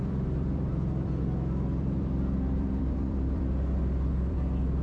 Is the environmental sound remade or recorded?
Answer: remade